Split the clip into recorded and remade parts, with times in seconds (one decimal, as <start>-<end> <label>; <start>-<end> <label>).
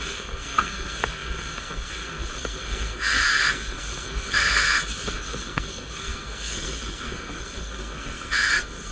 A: 0.0-8.9 remade